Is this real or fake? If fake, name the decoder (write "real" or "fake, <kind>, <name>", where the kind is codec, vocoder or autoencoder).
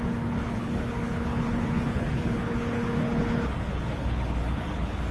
fake, codec, HILCodec